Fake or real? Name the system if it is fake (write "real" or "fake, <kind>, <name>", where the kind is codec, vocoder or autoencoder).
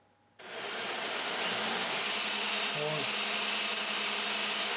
real